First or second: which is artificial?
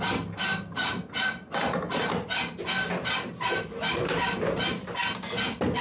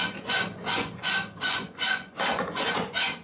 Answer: second